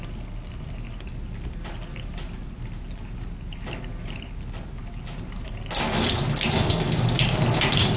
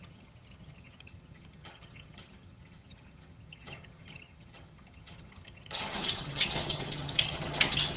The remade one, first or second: second